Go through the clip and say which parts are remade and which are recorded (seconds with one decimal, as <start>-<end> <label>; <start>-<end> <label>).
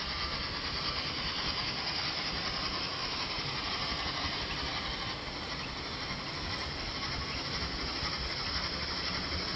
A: 0.0-3.0 recorded; 3.0-3.7 remade; 3.7-6.6 recorded; 6.6-7.2 remade; 7.2-9.6 recorded